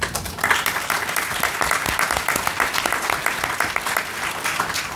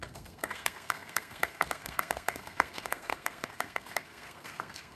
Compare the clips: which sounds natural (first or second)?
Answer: first